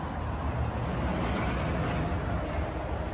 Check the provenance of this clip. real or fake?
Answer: real